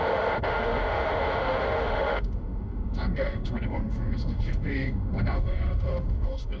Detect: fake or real fake